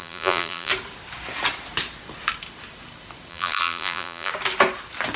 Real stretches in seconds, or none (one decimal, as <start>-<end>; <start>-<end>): 0.7-3.3; 4.3-5.2